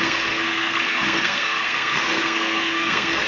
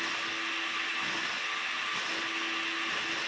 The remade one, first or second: first